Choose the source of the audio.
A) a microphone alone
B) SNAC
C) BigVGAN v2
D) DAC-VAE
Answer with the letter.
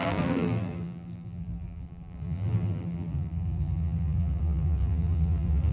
C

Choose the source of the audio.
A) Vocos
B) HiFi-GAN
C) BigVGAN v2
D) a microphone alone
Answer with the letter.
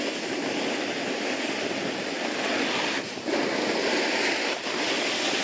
D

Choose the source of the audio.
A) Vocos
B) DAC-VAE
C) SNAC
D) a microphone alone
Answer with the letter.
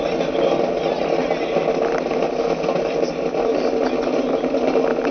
D